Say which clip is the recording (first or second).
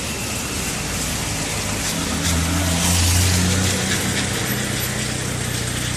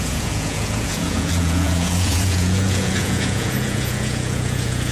first